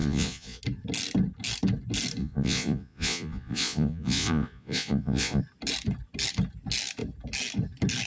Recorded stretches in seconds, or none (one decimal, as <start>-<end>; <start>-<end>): 0.6-2.2; 5.4-8.1

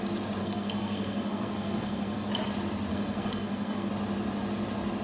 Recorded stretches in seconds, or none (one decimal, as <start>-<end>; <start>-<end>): 0.0-0.4; 2.3-2.9; 3.9-5.0

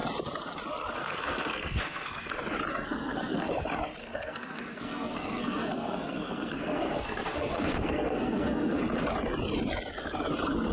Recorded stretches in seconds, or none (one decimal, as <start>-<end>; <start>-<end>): 0.0-1.0; 2.3-2.7; 3.5-4.0; 8.8-10.7

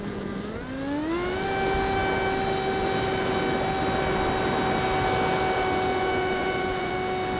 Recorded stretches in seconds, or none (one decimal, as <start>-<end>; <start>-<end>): 0.0-5.9; 6.9-7.4